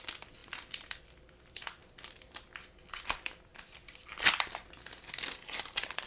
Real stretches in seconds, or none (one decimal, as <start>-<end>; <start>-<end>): 1.8-2.9